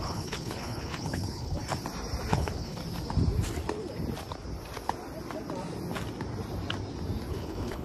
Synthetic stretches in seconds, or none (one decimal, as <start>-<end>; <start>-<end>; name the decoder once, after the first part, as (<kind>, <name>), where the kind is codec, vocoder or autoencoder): 0.0-1.6 (codec, HILCodec); 2.3-2.8; 7.3-7.8

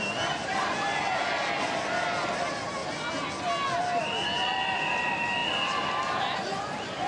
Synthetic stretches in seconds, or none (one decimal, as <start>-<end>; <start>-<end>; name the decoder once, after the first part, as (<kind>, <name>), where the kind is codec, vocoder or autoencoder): none

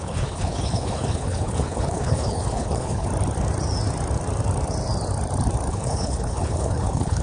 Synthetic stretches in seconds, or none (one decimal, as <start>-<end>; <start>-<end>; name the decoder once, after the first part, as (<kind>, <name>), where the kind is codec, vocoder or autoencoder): 0.0-3.1 (codec, HILCodec); 5.7-7.2

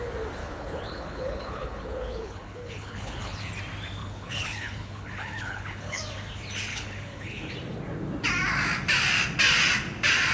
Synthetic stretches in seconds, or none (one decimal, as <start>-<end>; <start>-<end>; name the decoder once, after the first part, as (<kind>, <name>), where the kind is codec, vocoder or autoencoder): 0.4-3.5 (codec, HILCodec); 4.0-6.0; 6.7-7.5

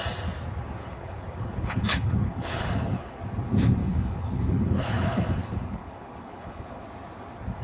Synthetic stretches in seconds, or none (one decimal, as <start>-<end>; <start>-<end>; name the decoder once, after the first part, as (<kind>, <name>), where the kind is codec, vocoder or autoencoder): 0.8-3.2 (codec, HILCodec); 3.8-6.8

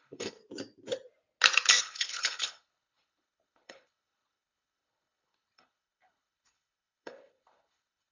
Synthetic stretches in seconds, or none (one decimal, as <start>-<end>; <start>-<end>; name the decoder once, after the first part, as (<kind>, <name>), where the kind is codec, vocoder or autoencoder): 0.0-0.4 (codec, HILCodec); 1.8-8.1

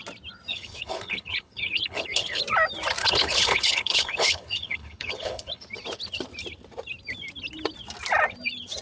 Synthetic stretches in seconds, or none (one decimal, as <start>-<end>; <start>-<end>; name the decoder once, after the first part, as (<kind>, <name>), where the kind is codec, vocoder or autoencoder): 0.5-2.4 (codec, HILCodec); 3.0-5.6